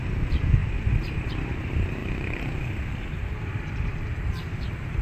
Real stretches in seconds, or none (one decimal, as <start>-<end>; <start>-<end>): 0.6-1.3